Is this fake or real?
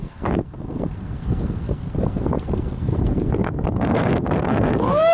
fake